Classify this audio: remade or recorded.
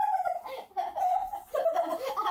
remade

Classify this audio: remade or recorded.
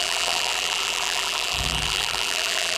remade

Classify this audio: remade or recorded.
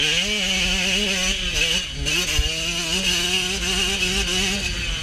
recorded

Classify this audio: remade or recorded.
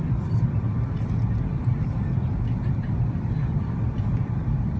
remade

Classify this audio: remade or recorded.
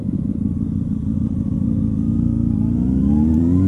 remade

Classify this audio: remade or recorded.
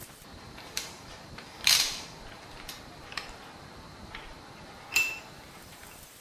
remade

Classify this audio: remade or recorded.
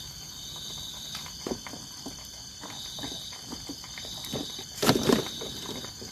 recorded